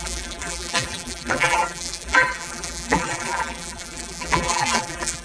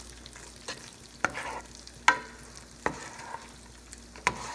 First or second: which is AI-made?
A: first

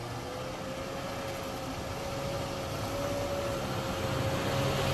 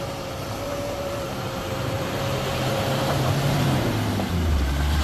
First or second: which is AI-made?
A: second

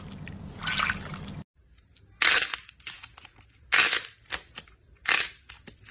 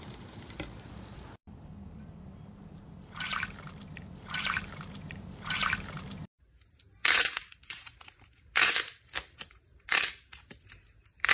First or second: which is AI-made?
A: second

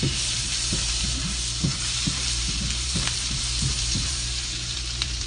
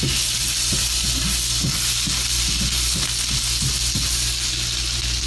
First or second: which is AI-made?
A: first